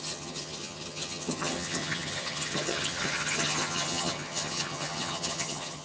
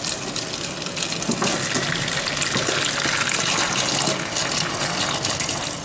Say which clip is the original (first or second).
second